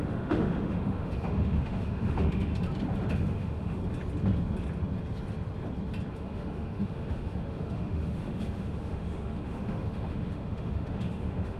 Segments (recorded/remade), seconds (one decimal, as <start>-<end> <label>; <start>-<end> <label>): 0.0-2.5 remade; 2.5-3.1 recorded; 3.1-3.8 remade; 3.8-6.1 recorded; 6.1-11.6 remade